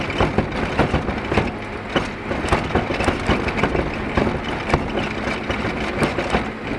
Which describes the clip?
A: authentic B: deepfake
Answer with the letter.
A